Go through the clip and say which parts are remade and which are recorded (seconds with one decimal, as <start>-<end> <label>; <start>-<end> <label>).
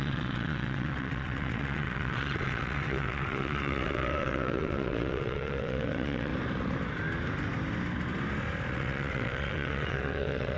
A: 0.0-6.3 remade; 6.3-8.7 recorded; 8.7-10.6 remade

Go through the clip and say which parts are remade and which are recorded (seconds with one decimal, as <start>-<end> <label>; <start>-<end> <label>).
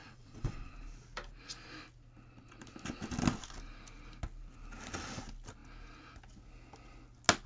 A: 0.0-0.7 remade; 0.7-7.5 recorded